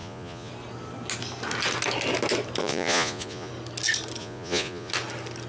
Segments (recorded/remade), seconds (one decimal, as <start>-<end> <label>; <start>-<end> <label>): 0.0-0.5 remade; 0.5-2.6 recorded; 2.6-3.5 remade; 3.5-4.2 recorded; 4.2-4.9 remade; 4.9-5.5 recorded